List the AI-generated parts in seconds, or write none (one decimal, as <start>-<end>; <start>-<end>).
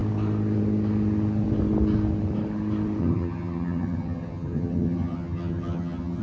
3.0-6.2